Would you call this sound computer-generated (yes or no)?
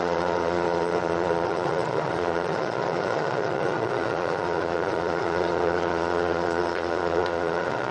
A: yes